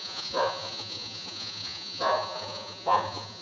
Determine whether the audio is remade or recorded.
remade